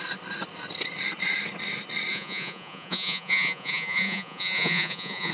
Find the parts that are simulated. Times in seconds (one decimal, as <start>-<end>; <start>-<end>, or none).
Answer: 2.1-5.3